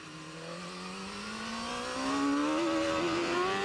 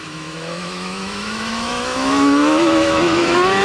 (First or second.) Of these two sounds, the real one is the first